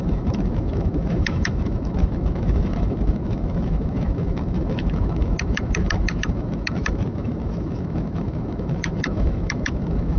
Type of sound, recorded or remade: remade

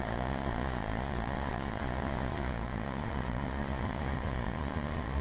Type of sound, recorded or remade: remade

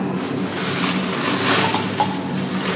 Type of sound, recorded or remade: recorded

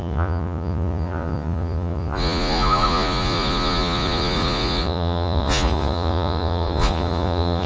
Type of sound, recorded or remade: remade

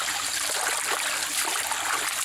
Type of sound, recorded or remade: recorded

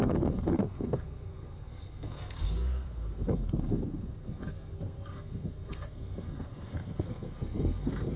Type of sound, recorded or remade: remade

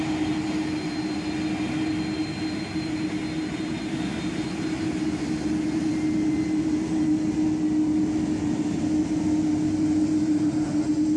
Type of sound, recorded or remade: recorded